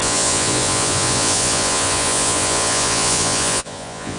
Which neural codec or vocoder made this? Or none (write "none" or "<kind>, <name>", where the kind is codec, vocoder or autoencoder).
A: vocoder, Vocos